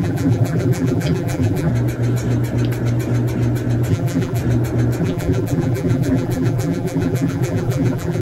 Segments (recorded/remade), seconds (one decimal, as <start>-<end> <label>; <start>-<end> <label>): 0.0-1.7 remade; 1.7-3.9 recorded; 3.9-4.4 remade; 4.4-5.0 recorded; 5.0-8.2 remade